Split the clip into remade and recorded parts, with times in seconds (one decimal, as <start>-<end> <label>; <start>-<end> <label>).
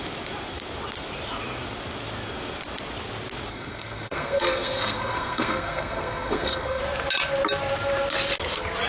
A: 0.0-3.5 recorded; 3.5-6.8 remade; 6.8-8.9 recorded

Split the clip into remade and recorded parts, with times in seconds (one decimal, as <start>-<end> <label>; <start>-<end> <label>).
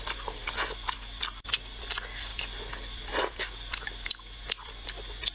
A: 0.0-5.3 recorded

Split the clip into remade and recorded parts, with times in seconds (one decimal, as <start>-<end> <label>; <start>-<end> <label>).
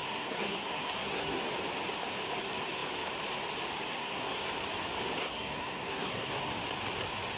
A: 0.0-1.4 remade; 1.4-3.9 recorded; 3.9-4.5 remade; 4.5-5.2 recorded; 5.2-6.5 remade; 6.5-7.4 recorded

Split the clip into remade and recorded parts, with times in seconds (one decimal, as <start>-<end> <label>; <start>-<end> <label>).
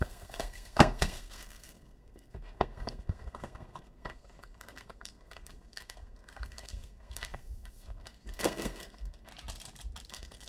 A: 0.0-9.3 remade; 9.3-10.1 recorded; 10.1-10.5 remade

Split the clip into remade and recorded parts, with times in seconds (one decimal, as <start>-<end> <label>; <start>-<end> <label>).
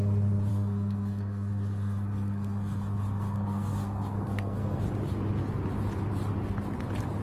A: 0.0-0.5 recorded; 0.5-4.8 remade; 4.8-7.2 recorded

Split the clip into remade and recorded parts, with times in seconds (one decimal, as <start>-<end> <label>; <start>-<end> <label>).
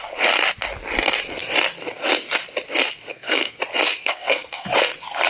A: 0.0-3.1 recorded; 3.1-3.6 remade; 3.6-4.0 recorded; 4.0-4.7 remade; 4.7-5.3 recorded